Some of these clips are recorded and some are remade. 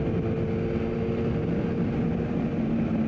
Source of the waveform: recorded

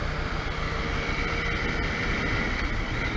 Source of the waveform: recorded